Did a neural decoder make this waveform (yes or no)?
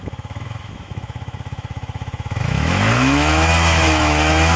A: yes